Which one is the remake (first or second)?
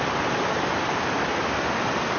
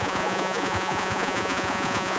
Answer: second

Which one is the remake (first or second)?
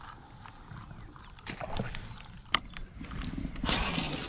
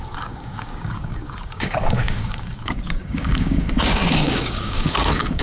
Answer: second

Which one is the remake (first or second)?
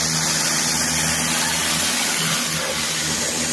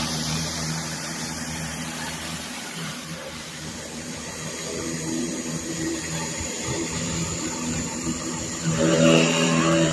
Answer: second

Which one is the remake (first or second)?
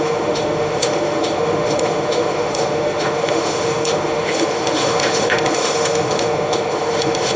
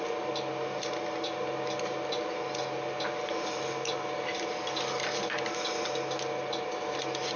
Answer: first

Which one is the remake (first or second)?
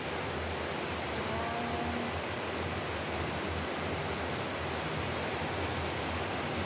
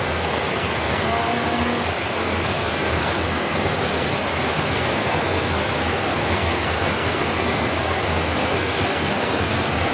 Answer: second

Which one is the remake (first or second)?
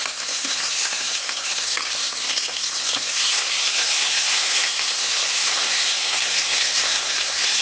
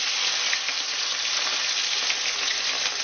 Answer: first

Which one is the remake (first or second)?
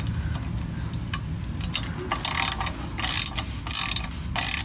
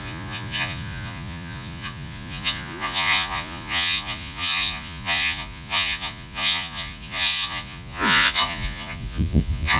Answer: second